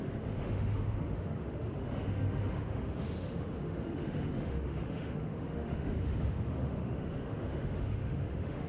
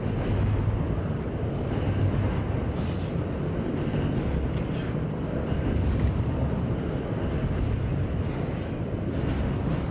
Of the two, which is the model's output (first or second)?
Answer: first